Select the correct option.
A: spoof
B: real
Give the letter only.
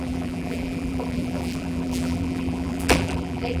A